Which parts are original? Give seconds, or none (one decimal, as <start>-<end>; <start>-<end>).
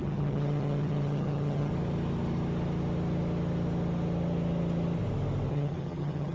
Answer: 1.7-5.5